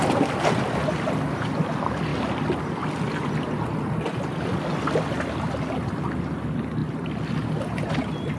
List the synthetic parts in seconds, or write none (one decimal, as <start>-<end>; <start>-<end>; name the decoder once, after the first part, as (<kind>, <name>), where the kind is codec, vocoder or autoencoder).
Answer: none